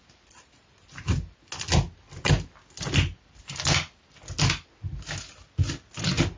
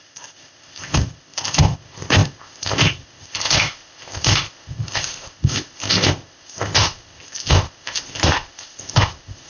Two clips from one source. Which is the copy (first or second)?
second